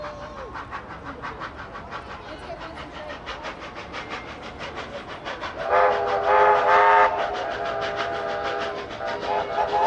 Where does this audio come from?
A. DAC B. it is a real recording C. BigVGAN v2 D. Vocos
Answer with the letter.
B